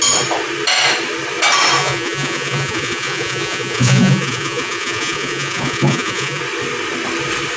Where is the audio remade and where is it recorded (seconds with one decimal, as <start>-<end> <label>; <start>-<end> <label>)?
0.0-1.8 recorded; 1.8-6.4 remade; 6.4-7.6 recorded